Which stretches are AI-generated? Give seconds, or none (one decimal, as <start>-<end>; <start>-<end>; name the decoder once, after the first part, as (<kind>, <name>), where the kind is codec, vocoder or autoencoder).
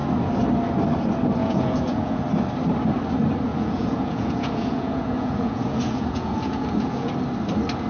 1.4-2.2 (vocoder, Vocos); 3.5-7.1